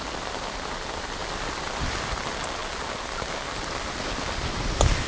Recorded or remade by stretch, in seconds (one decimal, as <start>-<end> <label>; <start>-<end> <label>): 0.0-5.1 recorded

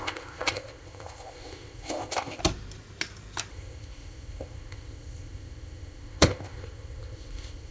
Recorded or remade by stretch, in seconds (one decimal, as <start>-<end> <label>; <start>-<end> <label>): 0.0-2.4 remade; 2.4-3.5 recorded; 3.5-7.7 remade

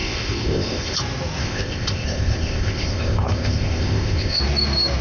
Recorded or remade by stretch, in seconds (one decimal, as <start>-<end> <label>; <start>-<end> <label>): 0.0-1.0 remade; 1.0-1.4 recorded; 1.4-4.4 remade; 4.4-5.0 recorded

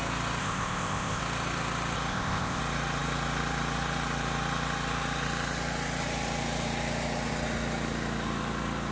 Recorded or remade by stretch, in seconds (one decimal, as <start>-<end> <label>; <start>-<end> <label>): 0.0-0.4 recorded; 0.4-1.2 remade; 1.2-2.1 recorded; 2.1-2.6 remade; 2.6-8.9 recorded

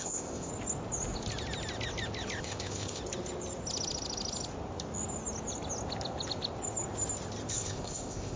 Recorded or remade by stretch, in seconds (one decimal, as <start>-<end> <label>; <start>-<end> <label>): 0.0-0.5 remade; 0.5-2.4 recorded; 2.4-3.0 remade; 3.0-7.5 recorded; 7.5-8.4 remade

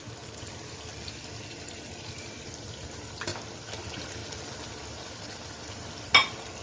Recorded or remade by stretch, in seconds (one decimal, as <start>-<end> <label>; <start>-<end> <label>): 0.0-6.6 recorded